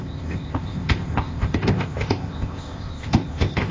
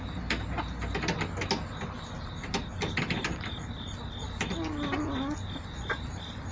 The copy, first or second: first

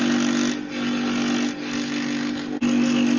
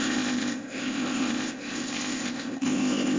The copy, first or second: second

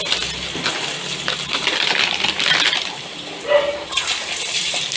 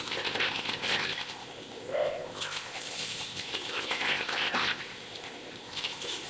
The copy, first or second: second